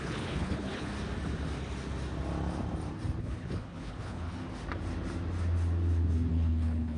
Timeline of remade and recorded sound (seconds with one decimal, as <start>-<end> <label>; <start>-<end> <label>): 0.0-0.9 remade; 0.9-3.2 recorded; 3.2-4.4 remade; 4.4-6.3 recorded; 6.3-7.0 remade